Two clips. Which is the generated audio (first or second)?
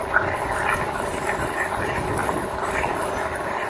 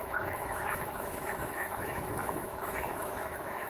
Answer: second